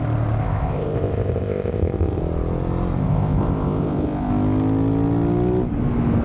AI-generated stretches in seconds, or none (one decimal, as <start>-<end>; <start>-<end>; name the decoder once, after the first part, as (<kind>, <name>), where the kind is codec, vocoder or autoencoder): 0.4-2.2 (codec, ZipCodec); 3.0-4.3